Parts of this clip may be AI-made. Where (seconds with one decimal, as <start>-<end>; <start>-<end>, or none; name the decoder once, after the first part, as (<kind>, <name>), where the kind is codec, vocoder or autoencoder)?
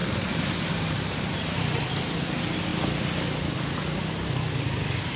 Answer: 0.0-1.8 (vocoder, BigVGAN v2)